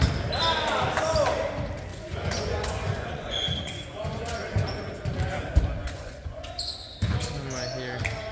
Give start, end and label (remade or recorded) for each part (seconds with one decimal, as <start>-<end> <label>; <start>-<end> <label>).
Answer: 0.0-1.9 recorded; 1.9-4.9 remade; 4.9-5.8 recorded; 5.8-7.3 remade; 7.3-8.3 recorded